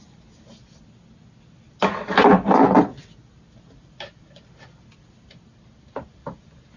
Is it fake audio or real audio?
real